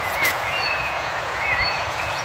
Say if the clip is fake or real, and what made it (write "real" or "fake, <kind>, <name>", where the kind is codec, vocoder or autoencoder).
fake, vocoder, Vocos